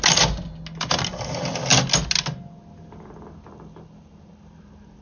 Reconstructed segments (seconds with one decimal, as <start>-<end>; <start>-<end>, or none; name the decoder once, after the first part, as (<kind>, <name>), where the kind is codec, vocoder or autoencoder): none